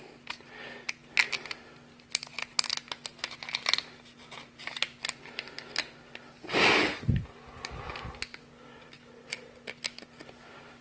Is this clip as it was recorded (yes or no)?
yes